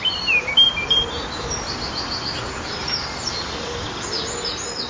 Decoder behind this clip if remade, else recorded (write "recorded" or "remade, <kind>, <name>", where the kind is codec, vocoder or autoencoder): recorded